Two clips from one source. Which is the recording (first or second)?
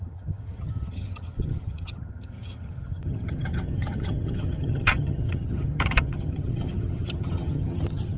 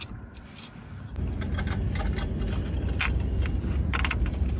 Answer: second